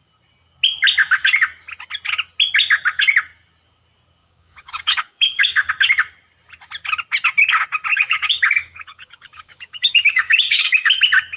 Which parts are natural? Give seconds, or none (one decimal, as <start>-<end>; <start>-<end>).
0.0-4.2; 5.7-7.9; 11.0-11.4